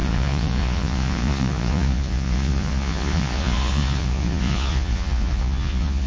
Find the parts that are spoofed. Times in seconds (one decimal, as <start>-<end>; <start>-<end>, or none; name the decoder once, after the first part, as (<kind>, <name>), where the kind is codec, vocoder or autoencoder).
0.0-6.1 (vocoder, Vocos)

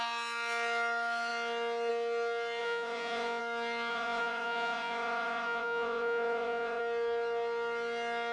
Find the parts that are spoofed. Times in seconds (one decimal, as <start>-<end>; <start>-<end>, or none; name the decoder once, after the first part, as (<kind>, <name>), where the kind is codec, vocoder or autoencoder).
2.6-3.4 (vocoder, Vocos); 3.9-6.8

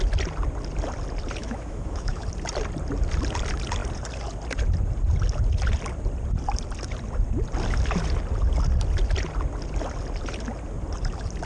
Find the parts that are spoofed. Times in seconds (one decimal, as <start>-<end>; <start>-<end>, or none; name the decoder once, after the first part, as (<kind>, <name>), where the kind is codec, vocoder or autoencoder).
1.4-2.2 (autoencoder, DAC-VAE)